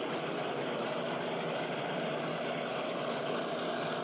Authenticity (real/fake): real